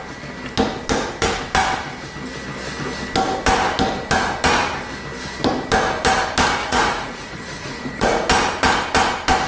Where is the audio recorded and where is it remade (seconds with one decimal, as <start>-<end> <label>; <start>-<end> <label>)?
0.0-6.6 recorded; 6.6-8.3 remade; 8.3-9.5 recorded